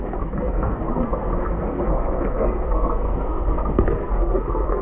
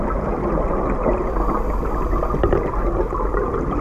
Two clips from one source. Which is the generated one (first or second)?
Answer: first